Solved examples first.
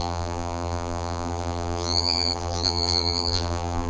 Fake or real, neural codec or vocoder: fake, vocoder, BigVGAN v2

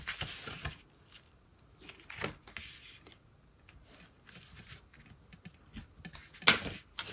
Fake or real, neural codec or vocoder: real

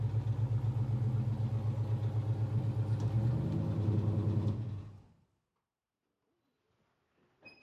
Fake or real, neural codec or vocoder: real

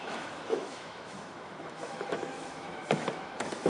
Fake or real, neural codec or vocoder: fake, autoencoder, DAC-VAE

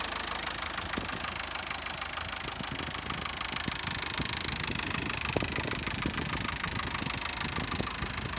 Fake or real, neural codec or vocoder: real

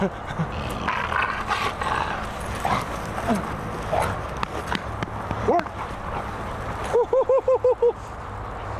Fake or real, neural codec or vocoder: real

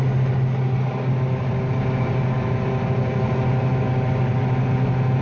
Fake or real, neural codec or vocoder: real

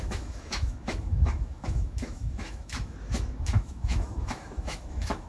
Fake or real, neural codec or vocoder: fake, autoencoder, DAC-VAE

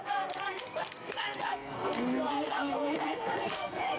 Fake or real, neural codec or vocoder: fake, codec, SNAC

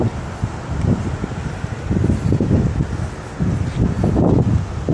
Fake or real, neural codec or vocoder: real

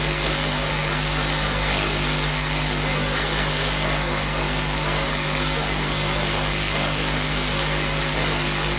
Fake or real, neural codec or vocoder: fake, codec, SNAC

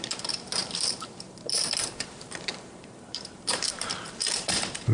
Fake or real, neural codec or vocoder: fake, vocoder, BigVGAN v2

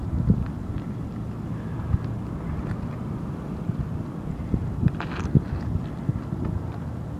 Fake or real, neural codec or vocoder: real